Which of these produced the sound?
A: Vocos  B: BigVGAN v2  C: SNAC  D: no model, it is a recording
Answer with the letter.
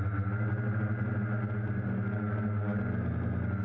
D